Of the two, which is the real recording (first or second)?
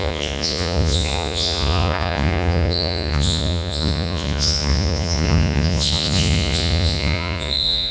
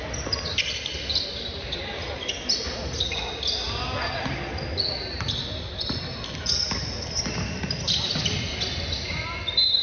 second